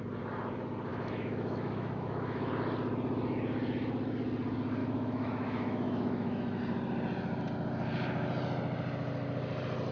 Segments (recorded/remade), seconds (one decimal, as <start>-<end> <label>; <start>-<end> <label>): 0.0-0.9 recorded; 0.9-2.5 remade; 2.5-4.8 recorded; 4.8-6.6 remade; 6.6-9.9 recorded